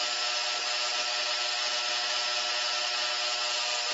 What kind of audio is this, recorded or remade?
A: recorded